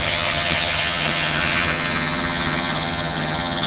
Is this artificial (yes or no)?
yes